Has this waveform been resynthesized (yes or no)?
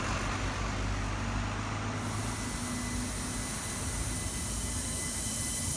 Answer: no